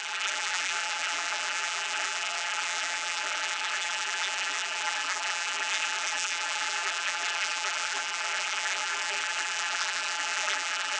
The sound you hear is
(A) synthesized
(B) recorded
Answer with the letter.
A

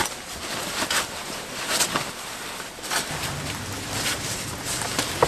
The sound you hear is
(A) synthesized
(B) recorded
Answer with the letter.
A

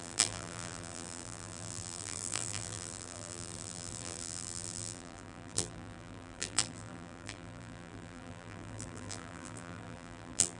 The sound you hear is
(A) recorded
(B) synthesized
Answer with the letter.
B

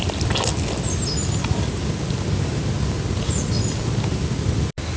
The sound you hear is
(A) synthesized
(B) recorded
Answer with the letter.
B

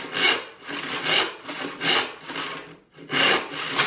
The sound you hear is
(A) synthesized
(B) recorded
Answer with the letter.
B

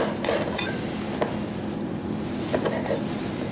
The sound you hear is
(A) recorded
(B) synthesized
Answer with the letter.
A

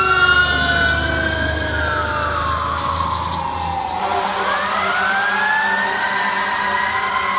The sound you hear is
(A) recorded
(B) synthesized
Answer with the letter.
A